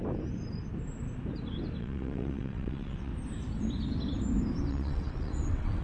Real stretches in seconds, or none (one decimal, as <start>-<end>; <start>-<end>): 0.0-1.8; 3.1-4.7